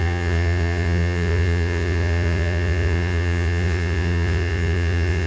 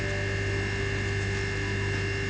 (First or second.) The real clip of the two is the second